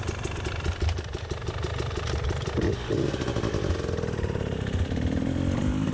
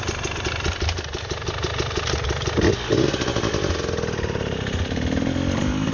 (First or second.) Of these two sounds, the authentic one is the second